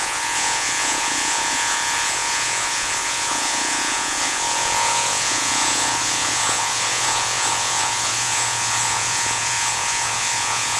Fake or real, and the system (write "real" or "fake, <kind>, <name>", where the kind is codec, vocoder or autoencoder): fake, vocoder, Vocos